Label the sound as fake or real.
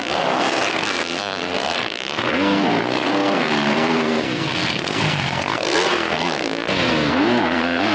fake